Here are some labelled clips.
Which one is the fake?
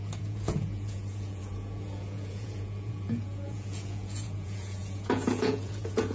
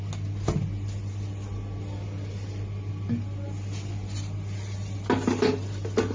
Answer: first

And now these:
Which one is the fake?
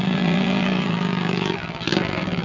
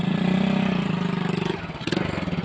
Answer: first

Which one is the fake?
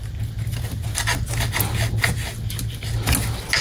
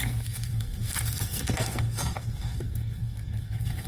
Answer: second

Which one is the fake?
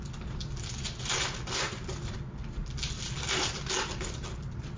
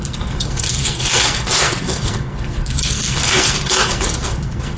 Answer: second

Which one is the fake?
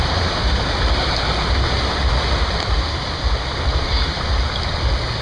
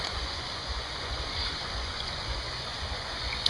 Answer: second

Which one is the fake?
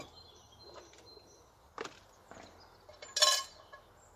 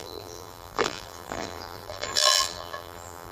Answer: second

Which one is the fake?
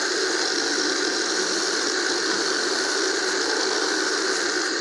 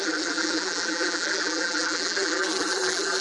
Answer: second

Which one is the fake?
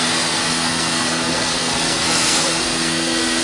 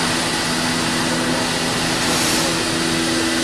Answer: first